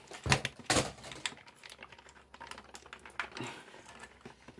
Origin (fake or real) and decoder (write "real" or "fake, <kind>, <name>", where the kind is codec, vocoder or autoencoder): real